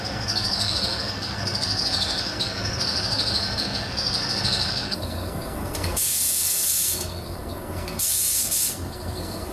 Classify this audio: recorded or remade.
remade